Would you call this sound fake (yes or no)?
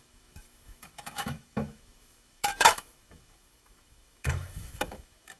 yes